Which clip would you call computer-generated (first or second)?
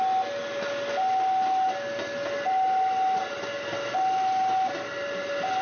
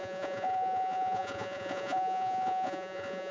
second